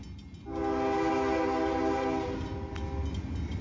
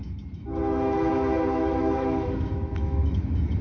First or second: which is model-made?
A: second